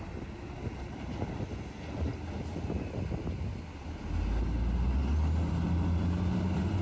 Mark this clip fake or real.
real